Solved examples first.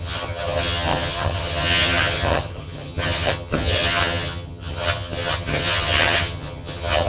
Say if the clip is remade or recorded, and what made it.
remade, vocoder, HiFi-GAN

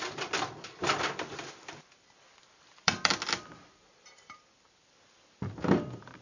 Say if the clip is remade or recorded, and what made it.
remade, vocoder, BigVGAN v2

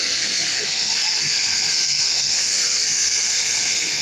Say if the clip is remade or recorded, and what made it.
remade, codec, SNAC